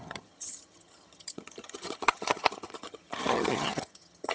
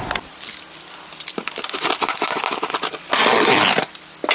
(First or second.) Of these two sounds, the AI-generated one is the first